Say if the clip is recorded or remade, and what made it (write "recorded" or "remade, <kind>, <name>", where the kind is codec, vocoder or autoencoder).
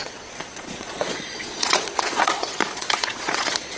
remade, vocoder, Vocos